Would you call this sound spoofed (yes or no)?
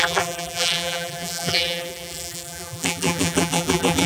yes